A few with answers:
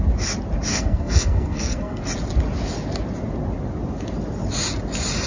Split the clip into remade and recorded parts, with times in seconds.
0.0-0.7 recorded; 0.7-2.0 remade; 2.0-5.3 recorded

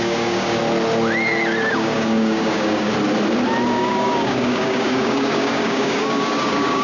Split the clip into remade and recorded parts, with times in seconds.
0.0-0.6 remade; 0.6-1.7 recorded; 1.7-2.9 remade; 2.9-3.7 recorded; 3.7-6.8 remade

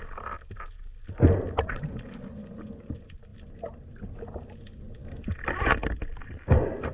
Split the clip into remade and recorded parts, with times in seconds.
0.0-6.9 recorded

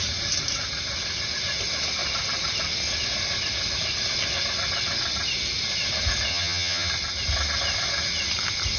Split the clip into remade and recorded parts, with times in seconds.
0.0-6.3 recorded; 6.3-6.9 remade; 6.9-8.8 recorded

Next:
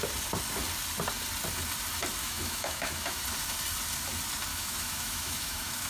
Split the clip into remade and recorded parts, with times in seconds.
0.0-2.2 recorded; 2.2-3.2 remade; 3.2-4.5 recorded; 4.5-5.9 remade

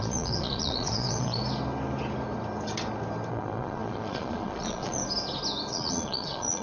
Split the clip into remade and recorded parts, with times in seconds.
0.0-1.4 remade; 1.4-3.3 recorded; 3.3-5.0 remade; 5.0-5.7 recorded; 5.7-6.6 remade

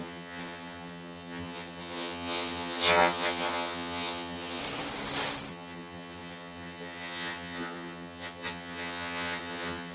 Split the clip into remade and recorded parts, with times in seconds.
0.0-4.6 remade; 4.6-5.5 recorded; 5.5-9.9 remade